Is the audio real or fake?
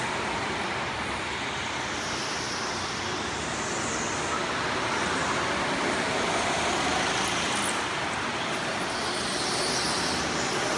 real